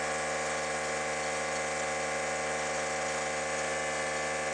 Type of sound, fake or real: real